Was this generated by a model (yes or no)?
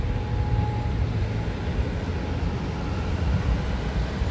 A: no